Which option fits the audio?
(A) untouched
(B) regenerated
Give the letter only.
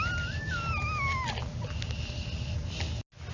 A